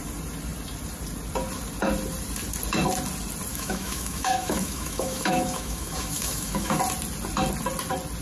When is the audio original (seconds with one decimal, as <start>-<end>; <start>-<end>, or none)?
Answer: 0.0-3.5; 6.8-8.2